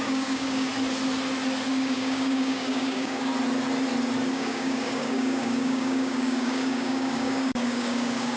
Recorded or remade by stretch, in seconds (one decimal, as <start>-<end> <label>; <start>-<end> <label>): 0.0-0.7 remade; 0.7-1.7 recorded; 1.7-3.3 remade; 3.3-4.3 recorded; 4.3-8.4 remade

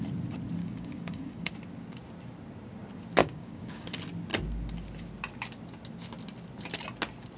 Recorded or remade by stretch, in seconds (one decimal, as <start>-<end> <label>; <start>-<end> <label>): 0.0-0.6 recorded; 0.6-1.5 remade; 1.5-3.2 recorded; 3.2-3.9 remade; 3.9-7.4 recorded

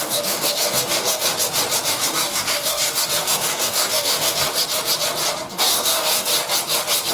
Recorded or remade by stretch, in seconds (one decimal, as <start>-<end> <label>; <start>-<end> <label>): 0.0-1.3 remade; 1.3-1.9 recorded; 1.9-4.5 remade; 4.5-5.5 recorded; 5.5-6.3 remade; 6.3-7.1 recorded

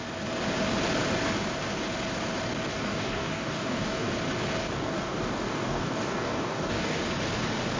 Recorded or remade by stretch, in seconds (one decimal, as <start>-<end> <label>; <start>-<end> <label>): 0.0-2.7 recorded; 2.7-4.1 remade; 4.1-4.6 recorded; 4.6-7.0 remade; 7.0-7.8 recorded